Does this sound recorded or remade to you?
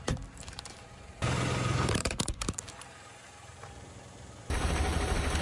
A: remade